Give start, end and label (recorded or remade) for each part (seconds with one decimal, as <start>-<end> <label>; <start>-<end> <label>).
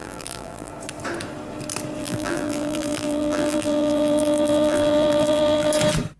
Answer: 0.0-0.7 remade; 0.7-2.0 recorded; 2.0-5.7 remade; 5.7-6.2 recorded